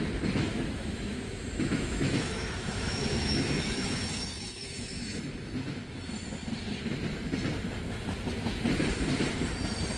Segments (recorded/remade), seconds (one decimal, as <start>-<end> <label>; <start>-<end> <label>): 0.0-0.5 recorded; 0.5-5.2 remade; 5.2-10.0 recorded